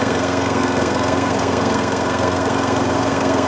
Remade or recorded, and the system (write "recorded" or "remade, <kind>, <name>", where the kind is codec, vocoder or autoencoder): remade, codec, SNAC